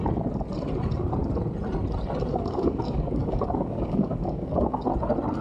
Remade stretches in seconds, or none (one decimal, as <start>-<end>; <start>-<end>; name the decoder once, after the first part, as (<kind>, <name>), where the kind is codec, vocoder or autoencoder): 2.3-4.8 (codec, DAC)